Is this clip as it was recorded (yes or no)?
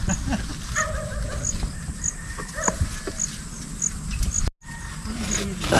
yes